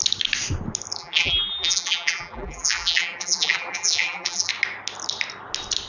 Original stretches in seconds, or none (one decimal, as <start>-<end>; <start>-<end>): 0.0-1.0; 4.5-5.9